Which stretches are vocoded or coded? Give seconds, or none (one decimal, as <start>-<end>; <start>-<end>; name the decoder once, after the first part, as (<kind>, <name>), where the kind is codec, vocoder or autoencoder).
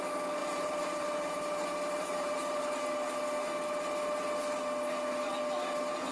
0.4-2.8 (vocoder, BigVGAN v2)